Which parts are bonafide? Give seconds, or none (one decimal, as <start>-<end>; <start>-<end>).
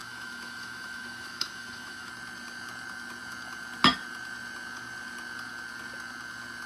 2.1-6.7